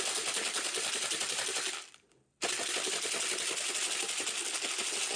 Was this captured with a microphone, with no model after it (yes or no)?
yes